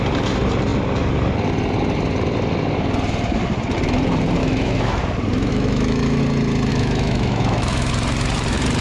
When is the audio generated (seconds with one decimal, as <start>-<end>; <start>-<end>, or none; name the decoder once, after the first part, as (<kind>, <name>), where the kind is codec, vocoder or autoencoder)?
4.4-5.0 (autoencoder, DAC-VAE); 5.5-6.2; 6.7-7.9